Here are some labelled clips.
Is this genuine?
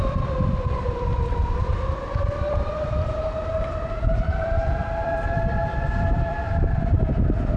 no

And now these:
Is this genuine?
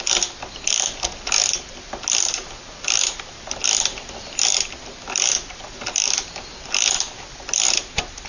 yes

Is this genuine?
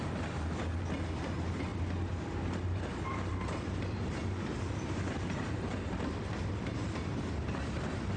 no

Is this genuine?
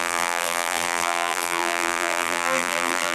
no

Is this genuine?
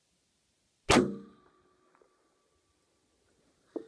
yes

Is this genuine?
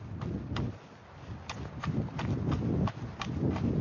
yes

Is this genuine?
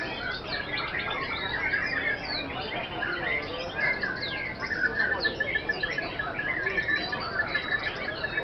yes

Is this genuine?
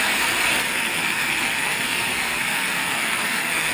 no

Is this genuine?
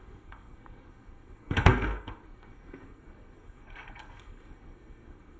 no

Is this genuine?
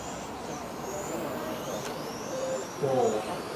yes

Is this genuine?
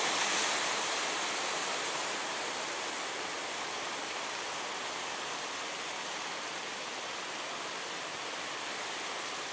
yes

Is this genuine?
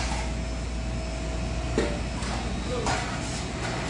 yes